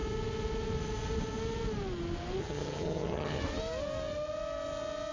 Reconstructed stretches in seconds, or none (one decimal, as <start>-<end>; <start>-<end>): 2.4-3.4